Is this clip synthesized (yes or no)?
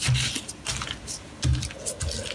no